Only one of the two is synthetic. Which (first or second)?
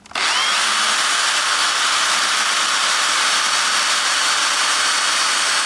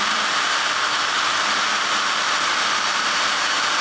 second